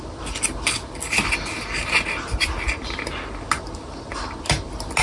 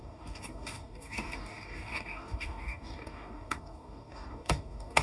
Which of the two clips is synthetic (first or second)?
second